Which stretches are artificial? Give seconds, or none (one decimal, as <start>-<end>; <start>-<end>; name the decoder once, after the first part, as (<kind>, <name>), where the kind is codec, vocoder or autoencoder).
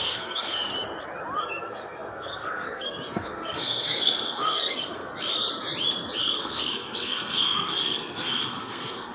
0.0-0.7 (codec, SNAC); 1.4-5.1; 6.2-9.1